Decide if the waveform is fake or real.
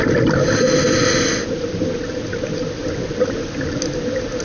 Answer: real